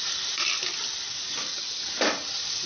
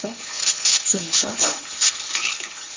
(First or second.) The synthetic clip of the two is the second